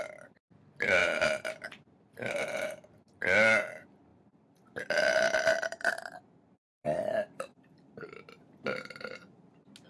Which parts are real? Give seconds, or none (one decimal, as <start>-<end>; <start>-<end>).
0.0-1.0; 2.3-4.1; 7.9-9.9